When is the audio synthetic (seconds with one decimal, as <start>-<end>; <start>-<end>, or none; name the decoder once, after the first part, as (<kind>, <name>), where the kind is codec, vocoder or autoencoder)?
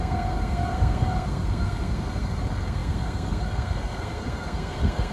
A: 0.0-5.1 (codec, SNAC)